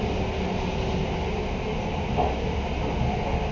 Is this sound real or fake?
real